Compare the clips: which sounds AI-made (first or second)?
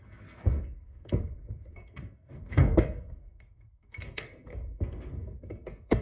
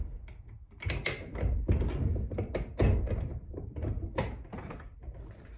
first